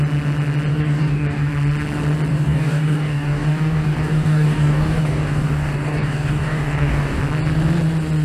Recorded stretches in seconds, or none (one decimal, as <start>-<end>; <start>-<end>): 0.0-0.7; 1.5-2.3; 7.2-8.2